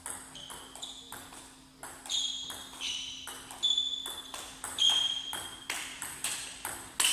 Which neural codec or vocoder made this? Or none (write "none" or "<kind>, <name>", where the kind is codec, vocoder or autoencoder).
none